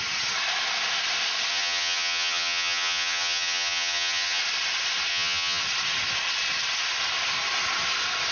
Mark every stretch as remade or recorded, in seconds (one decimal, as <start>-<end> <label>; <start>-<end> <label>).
0.0-1.5 recorded; 1.5-4.4 remade; 4.4-5.1 recorded; 5.1-5.6 remade; 5.6-8.3 recorded